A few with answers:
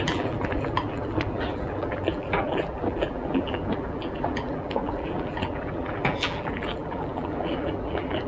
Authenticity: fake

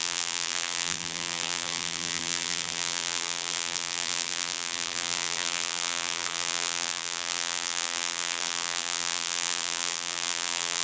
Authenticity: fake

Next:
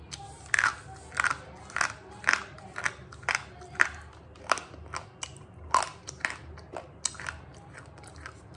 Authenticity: real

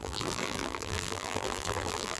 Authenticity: fake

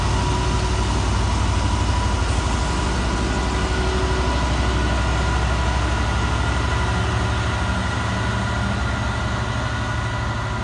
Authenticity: real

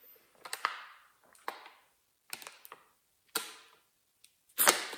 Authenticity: real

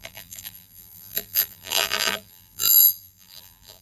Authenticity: fake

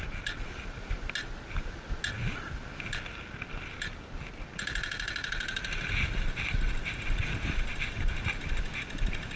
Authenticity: real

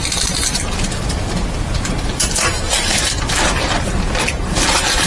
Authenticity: fake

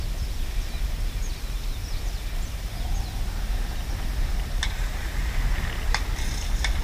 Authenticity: real